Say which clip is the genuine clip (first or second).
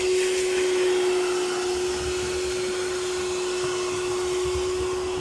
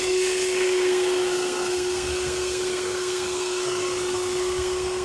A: first